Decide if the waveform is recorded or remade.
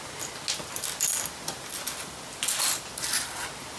recorded